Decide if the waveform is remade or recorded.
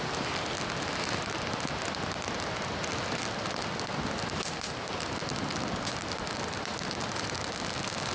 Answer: recorded